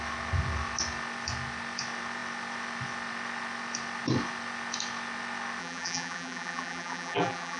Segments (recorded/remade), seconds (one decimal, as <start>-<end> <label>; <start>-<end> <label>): 0.0-5.6 recorded; 5.6-7.6 remade